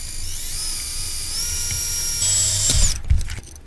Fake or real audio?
real